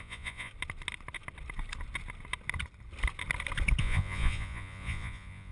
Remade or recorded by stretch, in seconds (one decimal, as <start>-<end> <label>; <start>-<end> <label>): 0.0-0.5 remade; 0.5-3.8 recorded; 3.8-5.5 remade